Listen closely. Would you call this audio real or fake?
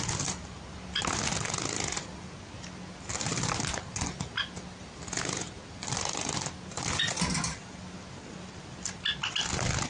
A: real